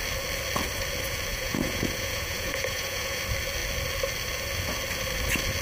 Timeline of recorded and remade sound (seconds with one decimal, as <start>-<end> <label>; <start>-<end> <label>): 0.0-1.3 recorded; 1.3-3.2 remade; 3.2-5.6 recorded